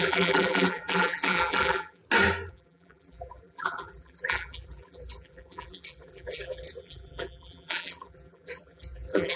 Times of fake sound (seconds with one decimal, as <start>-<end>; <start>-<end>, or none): 0.0-2.0; 2.5-9.4